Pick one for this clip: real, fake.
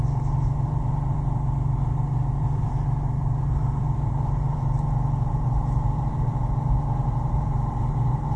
fake